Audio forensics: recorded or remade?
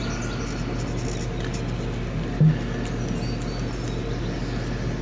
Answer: recorded